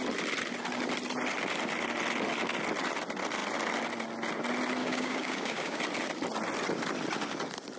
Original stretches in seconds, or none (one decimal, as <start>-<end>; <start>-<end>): 0.0-4.8; 5.8-7.8